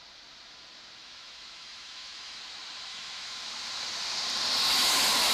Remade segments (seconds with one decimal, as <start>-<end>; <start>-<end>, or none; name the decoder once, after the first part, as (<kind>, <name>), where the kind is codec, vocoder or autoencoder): 1.0-2.4 (autoencoder, DAC-VAE); 2.9-3.5